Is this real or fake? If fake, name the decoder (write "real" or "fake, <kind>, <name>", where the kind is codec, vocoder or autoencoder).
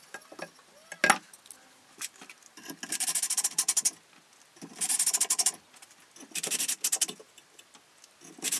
real